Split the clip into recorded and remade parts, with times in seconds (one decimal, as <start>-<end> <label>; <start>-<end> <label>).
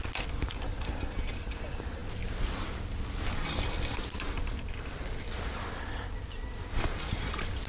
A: 0.0-7.7 recorded